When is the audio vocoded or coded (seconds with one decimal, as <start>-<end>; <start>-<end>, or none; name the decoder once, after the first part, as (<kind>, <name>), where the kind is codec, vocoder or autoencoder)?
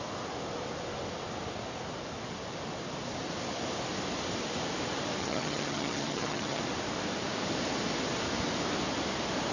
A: 5.2-6.6 (vocoder, HiFi-GAN)